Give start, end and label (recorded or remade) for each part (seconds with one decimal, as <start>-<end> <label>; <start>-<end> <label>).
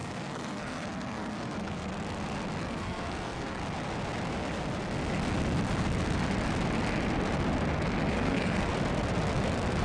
0.0-1.9 remade; 1.9-2.6 recorded; 2.6-3.6 remade; 3.6-8.1 recorded; 8.1-8.7 remade; 8.7-9.8 recorded